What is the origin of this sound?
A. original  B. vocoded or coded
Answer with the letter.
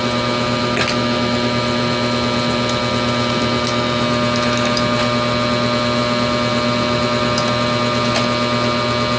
A